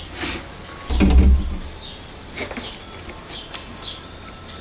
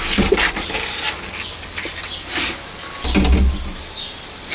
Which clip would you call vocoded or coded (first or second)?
second